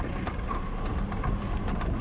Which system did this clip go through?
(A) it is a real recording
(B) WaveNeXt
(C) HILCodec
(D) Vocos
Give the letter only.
A